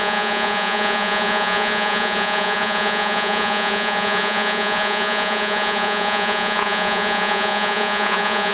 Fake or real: fake